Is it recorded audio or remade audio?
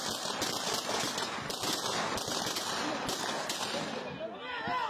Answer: recorded